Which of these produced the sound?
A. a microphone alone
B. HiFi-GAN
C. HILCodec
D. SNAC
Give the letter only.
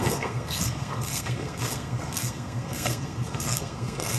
D